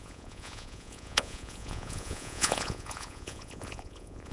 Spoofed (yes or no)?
yes